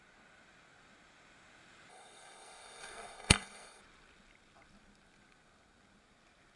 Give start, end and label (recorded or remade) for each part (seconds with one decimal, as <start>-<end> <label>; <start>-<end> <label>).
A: 0.0-1.9 recorded; 1.9-3.8 remade; 3.8-6.6 recorded